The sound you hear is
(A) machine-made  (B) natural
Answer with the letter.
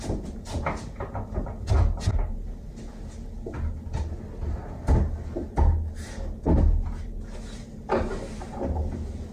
B